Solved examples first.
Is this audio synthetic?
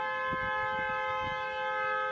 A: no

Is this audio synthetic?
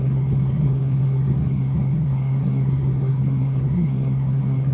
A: yes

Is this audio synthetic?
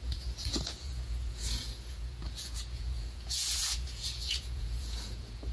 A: yes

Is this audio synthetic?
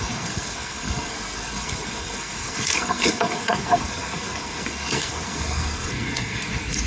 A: yes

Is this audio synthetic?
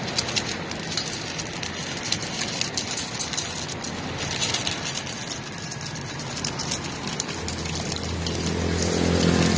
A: no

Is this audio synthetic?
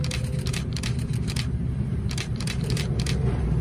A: yes